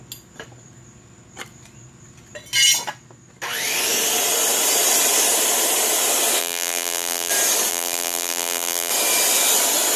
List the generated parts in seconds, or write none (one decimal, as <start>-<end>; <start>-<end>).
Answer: 6.4-7.3; 7.7-8.9

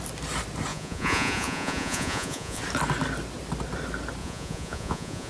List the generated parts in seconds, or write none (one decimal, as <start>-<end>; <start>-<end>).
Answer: 0.7-2.6; 4.2-5.3